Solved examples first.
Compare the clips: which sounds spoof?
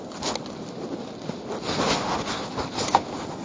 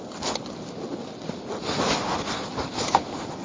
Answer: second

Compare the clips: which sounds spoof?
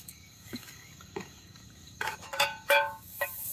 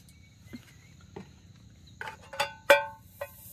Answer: first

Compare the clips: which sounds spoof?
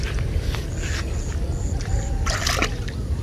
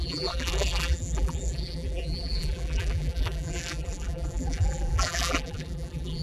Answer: second